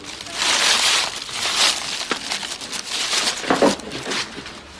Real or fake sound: real